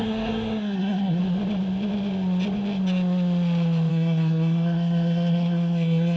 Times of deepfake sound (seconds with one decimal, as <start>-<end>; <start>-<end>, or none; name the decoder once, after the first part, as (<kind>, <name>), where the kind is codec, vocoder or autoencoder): 0.0-1.2 (codec, SNAC); 3.9-6.2